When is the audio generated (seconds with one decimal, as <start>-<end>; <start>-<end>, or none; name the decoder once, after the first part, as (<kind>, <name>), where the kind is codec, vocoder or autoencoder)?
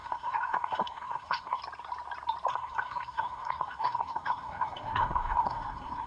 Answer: 0.0-1.6 (codec, SNAC); 2.5-6.1